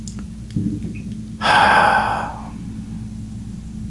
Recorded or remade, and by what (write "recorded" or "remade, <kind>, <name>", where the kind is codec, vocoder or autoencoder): recorded